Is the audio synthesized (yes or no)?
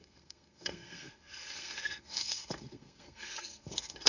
yes